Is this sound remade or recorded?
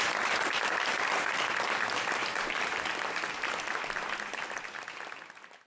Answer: recorded